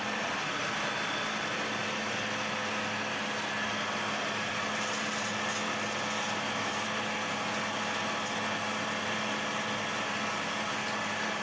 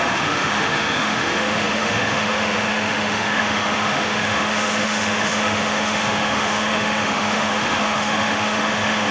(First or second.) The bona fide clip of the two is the first